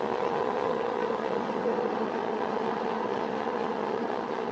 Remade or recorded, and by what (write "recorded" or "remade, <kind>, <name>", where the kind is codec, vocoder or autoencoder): remade, vocoder, Vocos